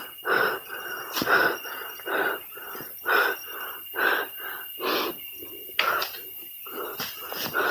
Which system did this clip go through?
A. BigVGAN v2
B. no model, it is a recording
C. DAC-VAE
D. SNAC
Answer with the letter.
B